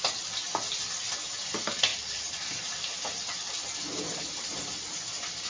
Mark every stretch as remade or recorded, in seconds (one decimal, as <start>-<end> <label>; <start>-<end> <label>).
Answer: 0.0-5.5 recorded